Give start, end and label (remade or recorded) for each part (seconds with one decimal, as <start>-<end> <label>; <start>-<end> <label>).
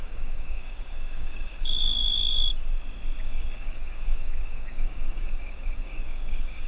0.0-2.5 remade; 2.5-3.2 recorded; 3.2-6.7 remade